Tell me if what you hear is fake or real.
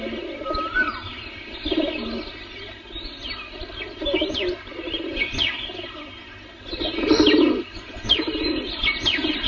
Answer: real